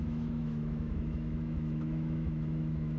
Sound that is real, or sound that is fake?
fake